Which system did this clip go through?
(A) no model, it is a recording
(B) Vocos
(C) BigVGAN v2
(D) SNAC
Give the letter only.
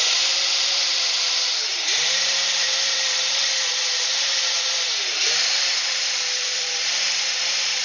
C